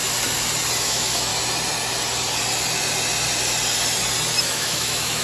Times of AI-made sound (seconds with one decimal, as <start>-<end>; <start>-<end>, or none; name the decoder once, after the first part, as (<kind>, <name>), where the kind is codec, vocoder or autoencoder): 0.8-1.3 (autoencoder, DAC-VAE); 4.4-5.2